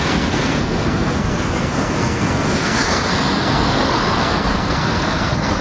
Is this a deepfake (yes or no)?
yes